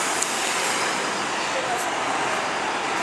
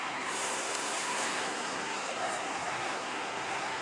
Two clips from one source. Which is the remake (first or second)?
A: second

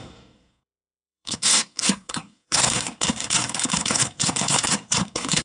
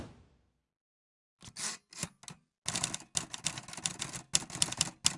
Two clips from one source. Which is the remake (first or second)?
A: first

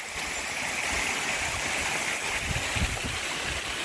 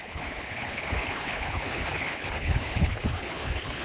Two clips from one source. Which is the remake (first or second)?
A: second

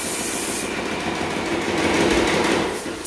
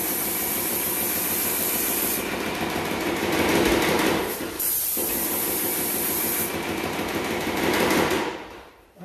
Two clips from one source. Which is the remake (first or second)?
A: second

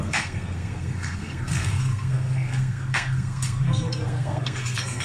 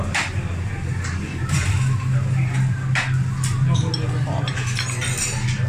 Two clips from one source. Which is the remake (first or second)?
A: first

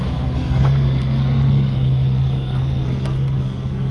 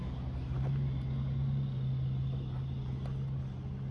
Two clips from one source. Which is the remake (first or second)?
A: first